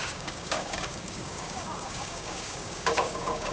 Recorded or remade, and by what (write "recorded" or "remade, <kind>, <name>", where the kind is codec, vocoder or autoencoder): remade, codec, DAC